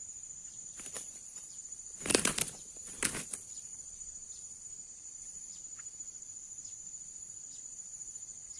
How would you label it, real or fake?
fake